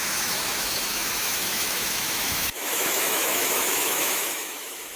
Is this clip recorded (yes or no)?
no